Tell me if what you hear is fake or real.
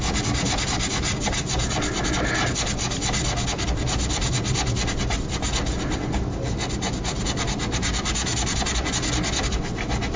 real